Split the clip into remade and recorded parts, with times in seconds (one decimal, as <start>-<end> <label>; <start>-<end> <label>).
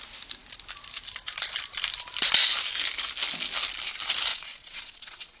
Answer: 0.0-4.3 recorded; 4.3-5.4 remade